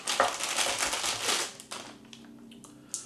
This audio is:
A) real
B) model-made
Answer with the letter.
A